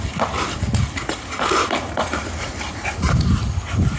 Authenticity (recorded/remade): recorded